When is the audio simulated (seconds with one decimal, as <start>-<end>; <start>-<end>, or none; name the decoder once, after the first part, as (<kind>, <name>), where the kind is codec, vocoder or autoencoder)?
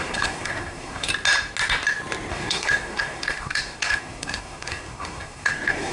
0.0-1.1 (codec, SNAC); 2.3-5.9